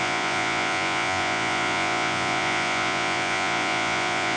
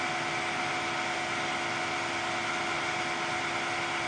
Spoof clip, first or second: first